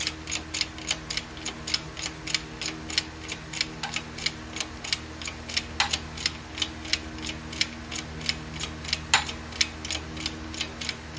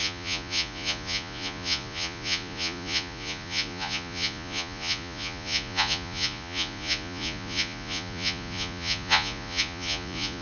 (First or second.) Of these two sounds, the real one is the first